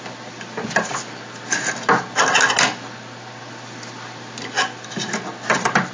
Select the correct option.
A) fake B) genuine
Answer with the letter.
B